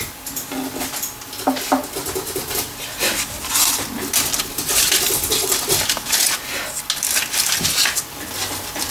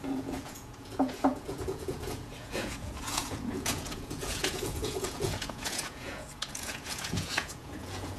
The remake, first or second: second